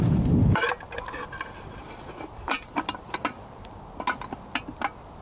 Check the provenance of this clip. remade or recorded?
recorded